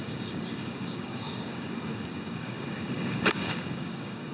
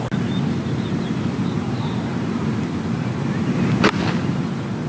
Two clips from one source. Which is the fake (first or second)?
first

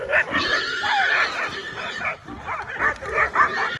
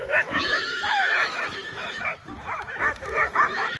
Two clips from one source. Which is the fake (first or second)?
second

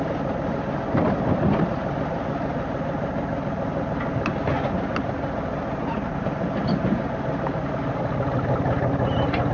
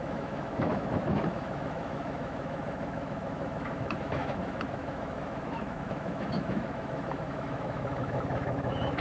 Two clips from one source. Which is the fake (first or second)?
second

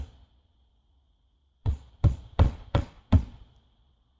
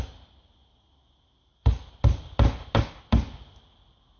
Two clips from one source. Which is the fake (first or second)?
first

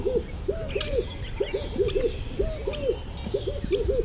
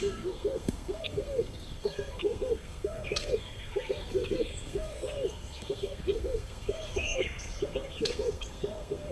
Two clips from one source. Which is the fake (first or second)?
second